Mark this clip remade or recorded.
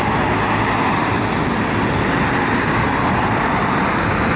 recorded